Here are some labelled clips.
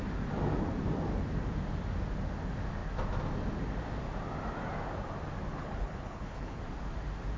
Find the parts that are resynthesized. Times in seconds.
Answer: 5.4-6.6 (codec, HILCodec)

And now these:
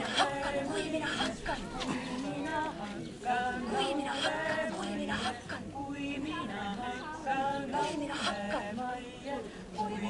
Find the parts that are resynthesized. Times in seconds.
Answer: none

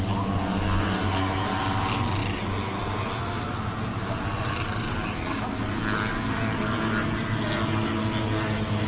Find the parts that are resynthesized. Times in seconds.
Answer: none

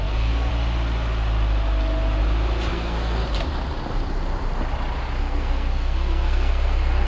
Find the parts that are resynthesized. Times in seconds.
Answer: 0.0-0.5 (codec, SNAC); 2.7-3.2; 5.2-7.1